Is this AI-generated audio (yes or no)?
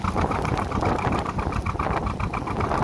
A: no